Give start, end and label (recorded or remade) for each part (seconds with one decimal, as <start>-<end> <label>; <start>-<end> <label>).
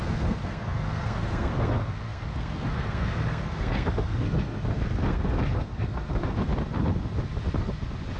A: 0.0-6.5 remade; 6.5-8.2 recorded